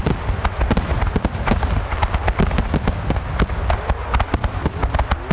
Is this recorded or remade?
recorded